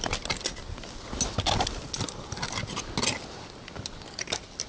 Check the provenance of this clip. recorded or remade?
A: recorded